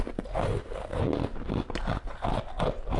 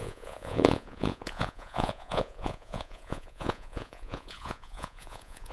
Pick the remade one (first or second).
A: second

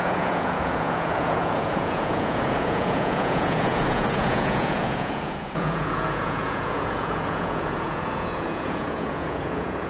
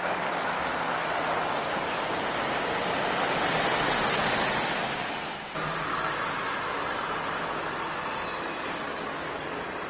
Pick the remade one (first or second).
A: first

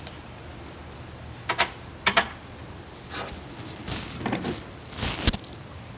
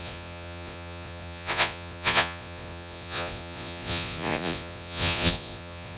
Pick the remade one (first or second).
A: second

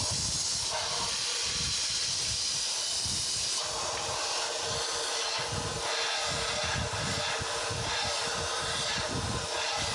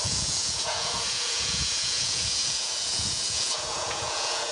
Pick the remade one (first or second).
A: second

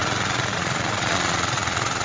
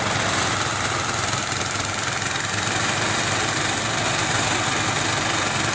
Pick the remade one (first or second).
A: first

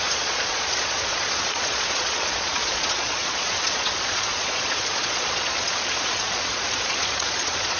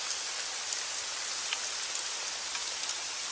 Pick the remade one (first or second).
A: first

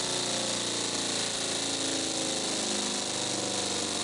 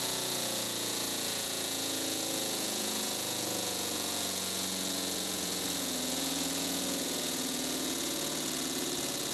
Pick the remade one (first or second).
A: second